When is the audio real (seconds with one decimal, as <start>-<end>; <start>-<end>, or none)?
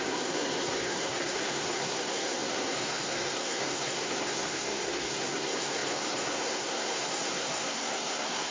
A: none